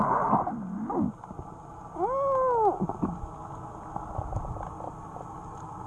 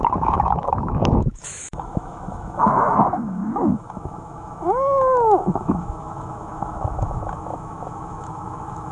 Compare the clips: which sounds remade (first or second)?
second